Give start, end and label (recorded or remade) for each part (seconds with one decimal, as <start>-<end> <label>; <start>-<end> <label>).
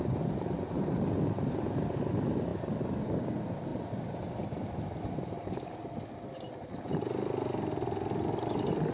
0.0-8.9 recorded